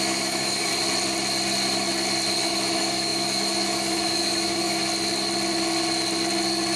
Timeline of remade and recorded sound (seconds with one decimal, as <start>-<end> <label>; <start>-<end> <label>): 0.0-0.7 remade; 0.7-2.4 recorded; 2.4-4.8 remade; 4.8-6.8 recorded